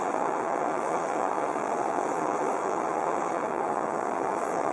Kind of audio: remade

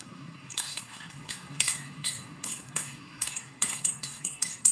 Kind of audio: remade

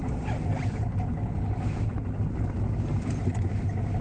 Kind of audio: recorded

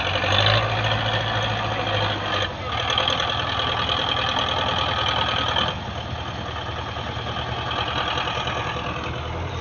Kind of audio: recorded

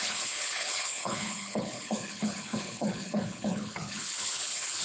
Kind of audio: remade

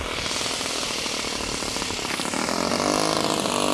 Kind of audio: recorded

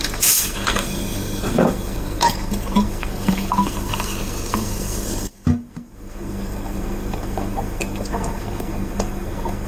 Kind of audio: remade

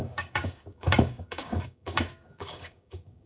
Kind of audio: remade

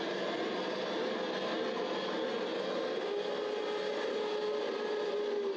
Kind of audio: recorded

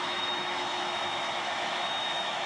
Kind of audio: remade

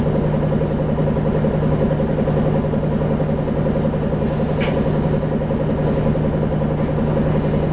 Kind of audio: recorded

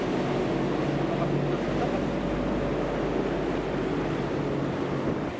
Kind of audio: recorded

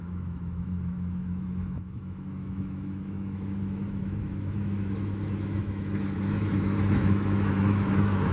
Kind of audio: remade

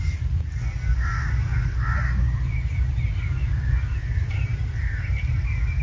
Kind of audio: recorded